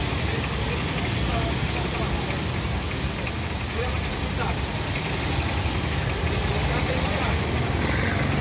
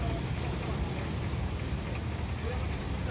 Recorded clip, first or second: first